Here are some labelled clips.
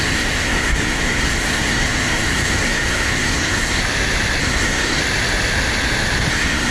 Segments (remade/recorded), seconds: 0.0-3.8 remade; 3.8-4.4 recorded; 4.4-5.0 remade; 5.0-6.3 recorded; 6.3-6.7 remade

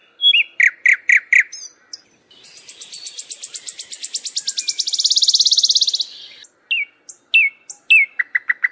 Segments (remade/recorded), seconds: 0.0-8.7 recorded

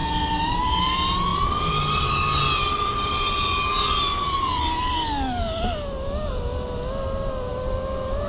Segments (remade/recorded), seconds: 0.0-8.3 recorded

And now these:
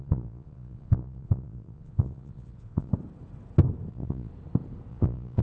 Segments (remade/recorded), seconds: 0.0-2.9 remade; 2.9-3.9 recorded; 3.9-4.3 remade; 4.3-4.9 recorded; 4.9-5.4 remade

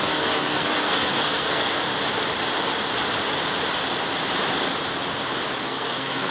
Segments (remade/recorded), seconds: 0.0-1.9 remade; 1.9-5.6 recorded; 5.6-6.3 remade

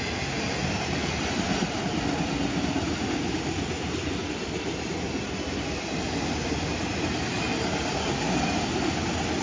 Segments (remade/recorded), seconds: 0.0-9.4 recorded

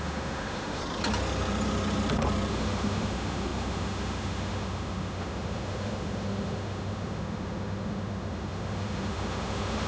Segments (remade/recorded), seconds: 0.0-0.8 remade; 0.8-2.5 recorded; 2.5-9.9 remade

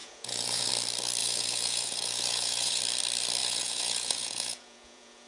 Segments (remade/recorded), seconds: 0.0-0.7 remade; 0.7-1.2 recorded; 1.2-2.8 remade; 2.8-3.4 recorded; 3.4-5.3 remade